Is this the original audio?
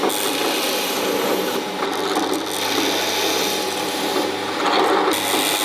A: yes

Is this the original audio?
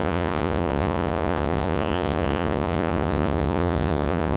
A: no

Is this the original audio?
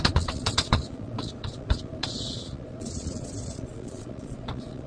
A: no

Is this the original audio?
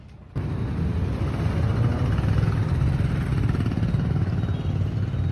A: yes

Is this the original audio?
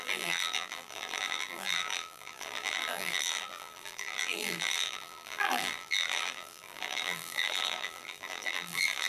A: no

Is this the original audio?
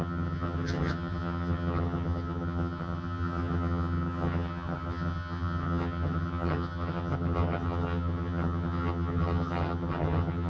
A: no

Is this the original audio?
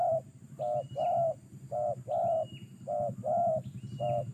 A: yes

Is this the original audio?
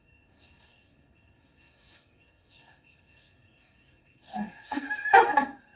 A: no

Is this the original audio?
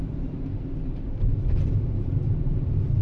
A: yes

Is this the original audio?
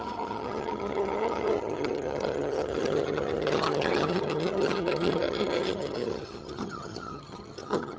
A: no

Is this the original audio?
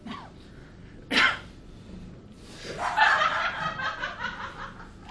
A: yes